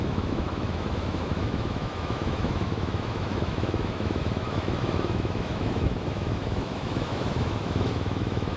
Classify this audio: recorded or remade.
remade